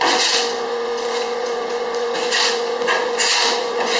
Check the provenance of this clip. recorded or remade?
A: remade